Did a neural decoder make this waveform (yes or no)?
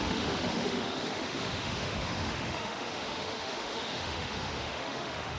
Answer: yes